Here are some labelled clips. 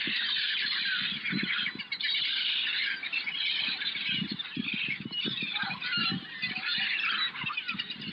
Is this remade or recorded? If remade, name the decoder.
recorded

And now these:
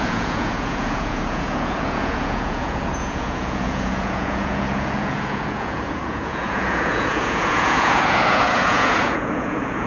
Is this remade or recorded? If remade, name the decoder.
remade, vocoder, Vocos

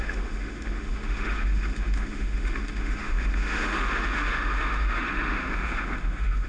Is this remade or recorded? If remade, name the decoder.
remade, autoencoder, DAC-VAE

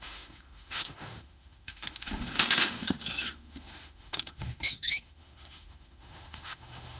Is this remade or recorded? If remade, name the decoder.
remade, autoencoder, DAC-VAE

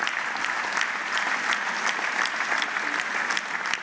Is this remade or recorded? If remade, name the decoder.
recorded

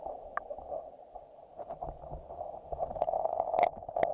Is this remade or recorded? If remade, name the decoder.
recorded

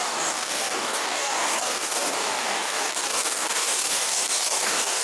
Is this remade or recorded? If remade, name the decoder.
remade, codec, DAC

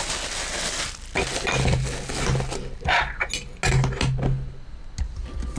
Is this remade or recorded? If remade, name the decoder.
recorded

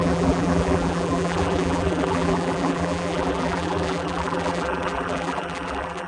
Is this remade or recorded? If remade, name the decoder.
remade, vocoder, BigVGAN v2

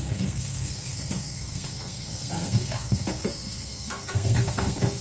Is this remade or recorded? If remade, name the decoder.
remade, codec, SNAC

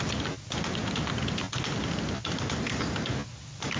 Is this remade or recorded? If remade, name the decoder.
recorded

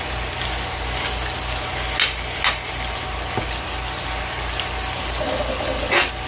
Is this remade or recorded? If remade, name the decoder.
recorded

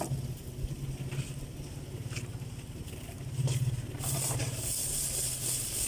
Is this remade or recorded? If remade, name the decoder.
recorded